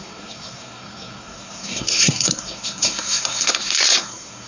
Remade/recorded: remade